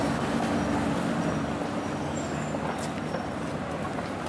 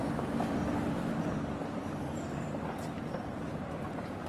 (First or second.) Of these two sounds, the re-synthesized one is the second